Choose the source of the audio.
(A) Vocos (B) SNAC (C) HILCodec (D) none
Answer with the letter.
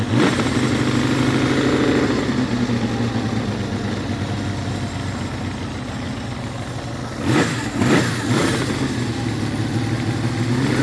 D